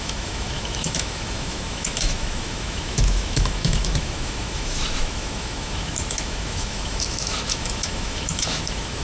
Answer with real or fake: fake